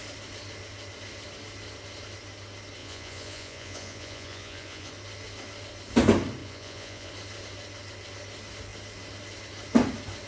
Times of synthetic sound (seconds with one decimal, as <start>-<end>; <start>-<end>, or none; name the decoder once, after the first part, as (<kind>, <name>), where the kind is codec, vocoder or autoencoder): 2.8-4.9 (vocoder, Vocos); 6.4-7.1